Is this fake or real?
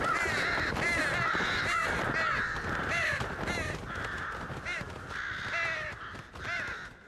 real